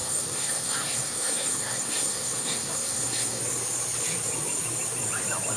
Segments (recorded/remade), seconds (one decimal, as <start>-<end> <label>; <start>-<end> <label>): 0.0-3.4 remade; 3.4-5.6 recorded